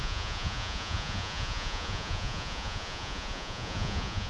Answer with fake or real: fake